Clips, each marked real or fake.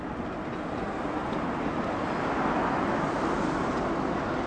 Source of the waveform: real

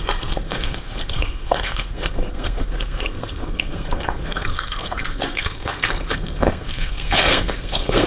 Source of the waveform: fake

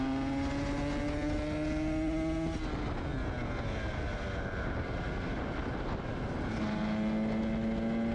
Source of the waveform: real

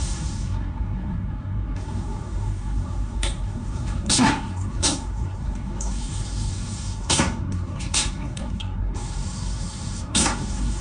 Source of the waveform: fake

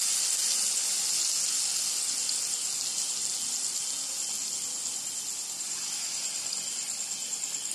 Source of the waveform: real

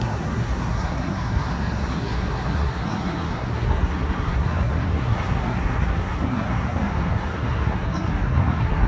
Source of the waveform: fake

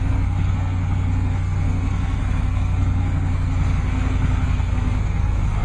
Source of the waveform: fake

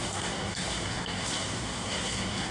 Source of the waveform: fake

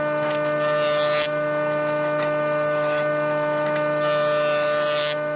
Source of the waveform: real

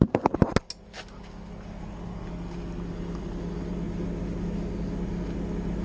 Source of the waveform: real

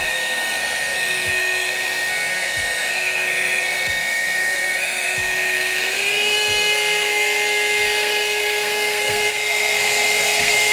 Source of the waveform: fake